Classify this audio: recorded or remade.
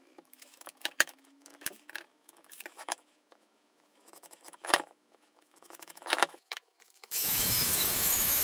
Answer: remade